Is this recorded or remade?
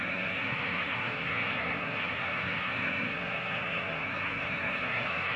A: remade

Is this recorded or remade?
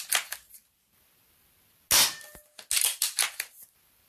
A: recorded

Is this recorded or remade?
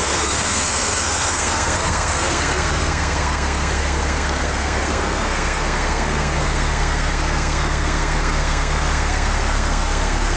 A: remade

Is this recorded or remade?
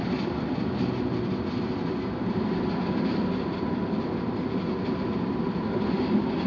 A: recorded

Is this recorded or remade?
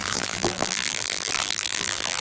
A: remade